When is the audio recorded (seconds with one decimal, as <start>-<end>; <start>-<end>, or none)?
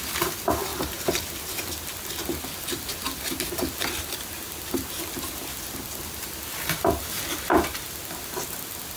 0.0-9.0